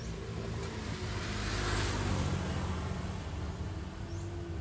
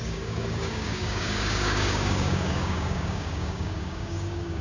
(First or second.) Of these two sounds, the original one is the first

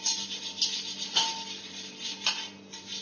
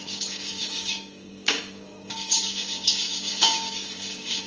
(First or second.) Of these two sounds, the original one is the first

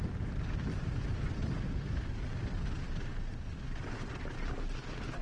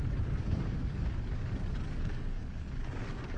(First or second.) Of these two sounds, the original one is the first